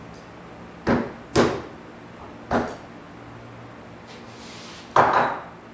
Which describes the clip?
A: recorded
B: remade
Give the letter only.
A